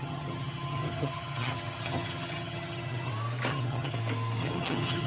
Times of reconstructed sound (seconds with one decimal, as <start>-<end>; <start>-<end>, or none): 0.0-3.1; 3.5-4.0; 4.4-5.1